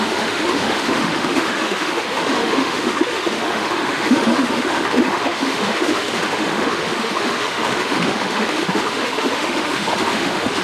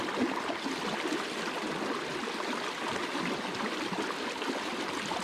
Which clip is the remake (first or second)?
first